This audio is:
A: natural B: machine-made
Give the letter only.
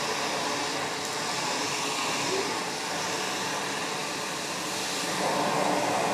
A